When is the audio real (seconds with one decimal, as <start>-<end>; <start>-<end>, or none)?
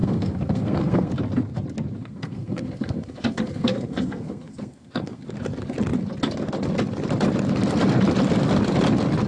1.1-2.0; 5.2-9.3